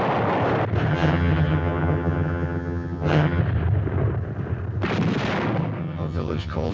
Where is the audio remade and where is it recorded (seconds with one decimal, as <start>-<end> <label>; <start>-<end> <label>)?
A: 0.0-0.9 recorded; 0.9-3.4 remade; 3.4-5.8 recorded; 5.8-6.7 remade